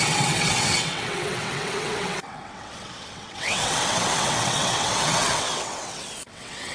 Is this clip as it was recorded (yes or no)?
no